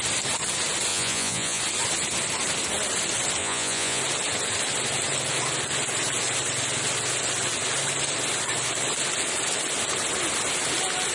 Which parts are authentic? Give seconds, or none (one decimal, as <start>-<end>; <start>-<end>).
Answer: 0.0-0.9; 1.6-3.4; 4.0-11.1